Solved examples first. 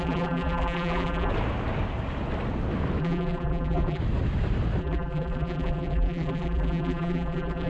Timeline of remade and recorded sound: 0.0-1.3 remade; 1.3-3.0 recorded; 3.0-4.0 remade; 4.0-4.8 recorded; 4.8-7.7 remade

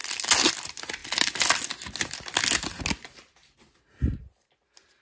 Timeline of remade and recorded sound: 0.0-5.0 recorded

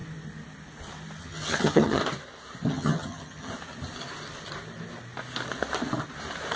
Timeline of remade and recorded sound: 0.0-1.2 recorded; 1.2-2.0 remade; 2.0-2.7 recorded; 2.7-3.5 remade; 3.5-6.6 recorded

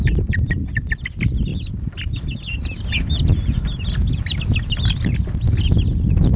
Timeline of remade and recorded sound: 0.0-0.7 remade; 0.7-6.4 recorded

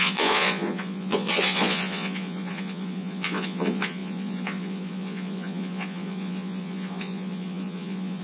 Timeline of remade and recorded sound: 0.0-8.2 remade